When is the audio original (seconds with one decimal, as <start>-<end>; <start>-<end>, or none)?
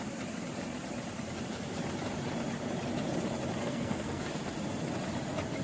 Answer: 0.0-3.6; 4.2-5.6